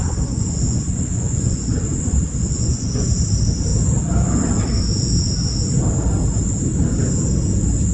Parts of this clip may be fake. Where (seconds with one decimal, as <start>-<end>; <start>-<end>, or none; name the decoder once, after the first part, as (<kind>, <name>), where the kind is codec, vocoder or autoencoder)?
0.0-3.3 (vocoder, Vocos)